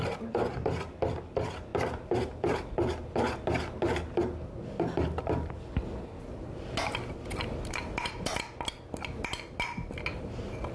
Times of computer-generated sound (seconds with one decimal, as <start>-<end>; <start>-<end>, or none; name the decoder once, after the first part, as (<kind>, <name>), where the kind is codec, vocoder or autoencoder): none